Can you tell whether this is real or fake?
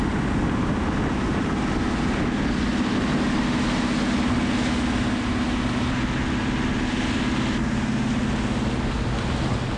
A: real